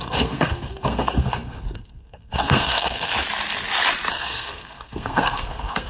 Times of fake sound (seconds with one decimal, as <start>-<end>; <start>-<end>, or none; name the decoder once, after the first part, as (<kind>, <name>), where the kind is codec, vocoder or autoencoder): 0.0-3.1 (codec, SNAC); 4.1-5.9